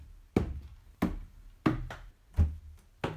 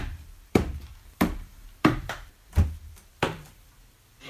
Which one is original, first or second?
first